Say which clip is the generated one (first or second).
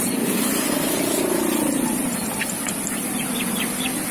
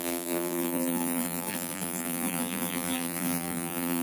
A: second